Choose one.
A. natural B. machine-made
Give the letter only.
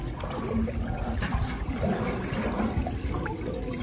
B